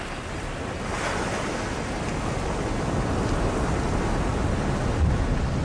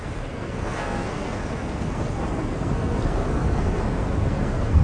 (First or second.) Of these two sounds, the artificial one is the second